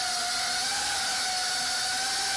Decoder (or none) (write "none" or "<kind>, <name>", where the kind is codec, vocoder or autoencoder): none